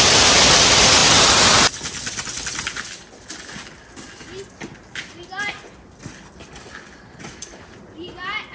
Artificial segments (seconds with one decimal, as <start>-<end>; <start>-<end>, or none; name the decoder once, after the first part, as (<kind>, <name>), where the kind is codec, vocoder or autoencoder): none